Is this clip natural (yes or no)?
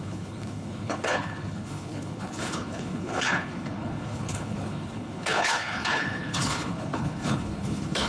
no